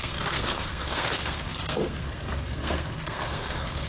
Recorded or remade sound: remade